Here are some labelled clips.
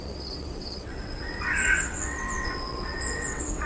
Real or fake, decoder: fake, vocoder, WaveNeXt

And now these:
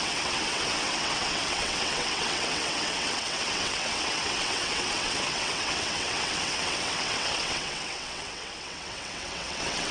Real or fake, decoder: fake, vocoder, WaveNeXt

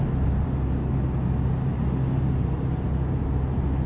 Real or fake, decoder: real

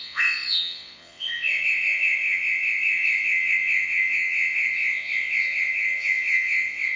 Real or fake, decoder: fake, vocoder, WaveNeXt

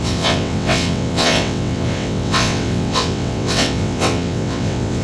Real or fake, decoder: fake, vocoder, WaveNeXt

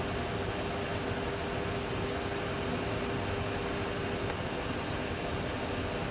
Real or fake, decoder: real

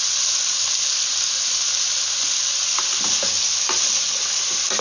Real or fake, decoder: real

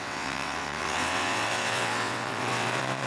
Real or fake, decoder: fake, vocoder, WaveNeXt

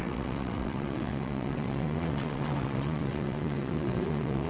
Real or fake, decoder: fake, vocoder, WaveNeXt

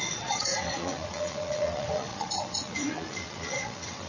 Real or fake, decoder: fake, vocoder, WaveNeXt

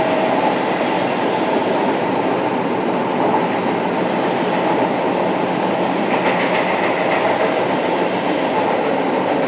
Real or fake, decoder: real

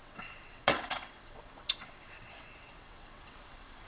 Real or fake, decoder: fake, vocoder, WaveNeXt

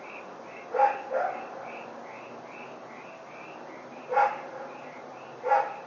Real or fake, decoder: real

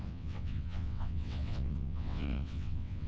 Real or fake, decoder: fake, vocoder, WaveNeXt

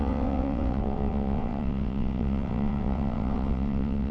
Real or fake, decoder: fake, vocoder, WaveNeXt